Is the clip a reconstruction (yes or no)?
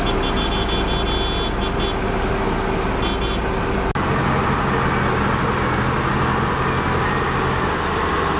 no